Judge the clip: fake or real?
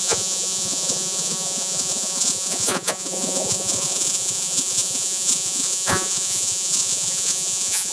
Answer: fake